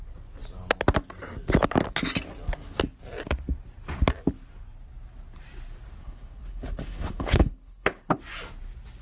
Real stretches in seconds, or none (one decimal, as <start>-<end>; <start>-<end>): 0.0-6.0; 8.2-9.0